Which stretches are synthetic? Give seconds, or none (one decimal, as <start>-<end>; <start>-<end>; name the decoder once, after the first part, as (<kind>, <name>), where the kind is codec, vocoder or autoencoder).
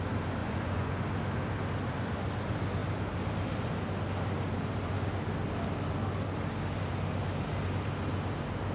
0.4-1.0 (vocoder, Vocos)